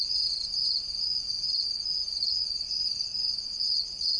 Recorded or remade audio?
recorded